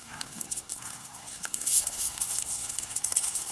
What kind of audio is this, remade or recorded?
remade